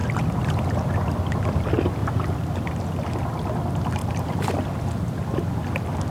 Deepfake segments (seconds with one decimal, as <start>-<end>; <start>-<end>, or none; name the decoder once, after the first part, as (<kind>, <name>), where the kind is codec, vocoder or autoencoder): 0.0-1.1 (vocoder, BigVGAN v2); 4.0-4.5